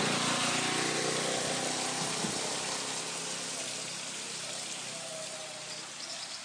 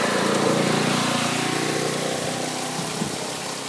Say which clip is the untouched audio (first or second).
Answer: first